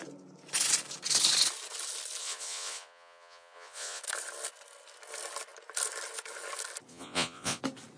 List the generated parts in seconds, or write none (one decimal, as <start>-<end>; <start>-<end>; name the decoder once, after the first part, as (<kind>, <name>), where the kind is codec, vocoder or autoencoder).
2.2-4.0 (vocoder, Vocos); 6.9-7.6